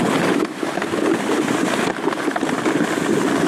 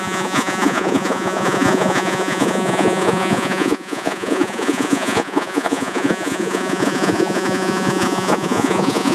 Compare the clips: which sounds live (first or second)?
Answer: first